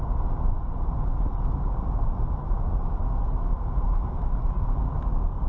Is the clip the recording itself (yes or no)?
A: yes